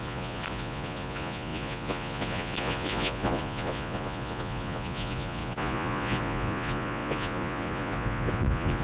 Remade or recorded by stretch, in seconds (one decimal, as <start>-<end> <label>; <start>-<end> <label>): 0.0-8.8 remade

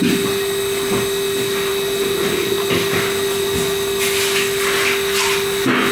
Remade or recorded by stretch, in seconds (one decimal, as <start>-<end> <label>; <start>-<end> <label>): 0.0-5.9 recorded

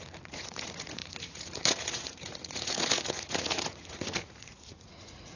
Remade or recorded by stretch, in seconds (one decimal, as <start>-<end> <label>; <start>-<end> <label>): 0.0-5.4 remade

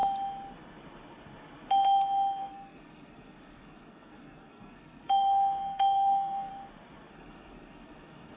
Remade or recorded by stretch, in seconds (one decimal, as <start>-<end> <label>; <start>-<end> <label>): 0.0-2.4 recorded; 2.4-6.5 remade; 6.5-7.1 recorded; 7.1-8.4 remade

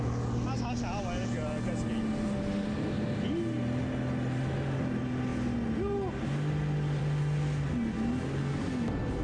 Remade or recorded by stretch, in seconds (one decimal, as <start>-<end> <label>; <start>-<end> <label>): 0.0-9.2 recorded

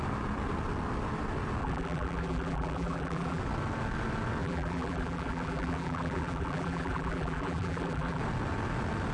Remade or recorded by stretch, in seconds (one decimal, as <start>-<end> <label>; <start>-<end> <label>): 0.0-1.6 recorded; 1.6-3.4 remade; 3.4-4.4 recorded; 4.4-8.2 remade; 8.2-9.1 recorded

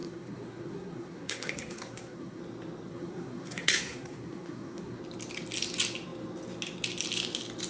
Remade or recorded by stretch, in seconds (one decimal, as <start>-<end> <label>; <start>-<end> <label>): 0.0-2.4 remade; 2.4-2.9 recorded; 2.9-5.0 remade; 5.0-7.7 recorded